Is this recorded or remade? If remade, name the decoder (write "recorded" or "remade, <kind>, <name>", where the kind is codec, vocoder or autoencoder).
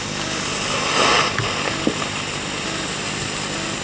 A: recorded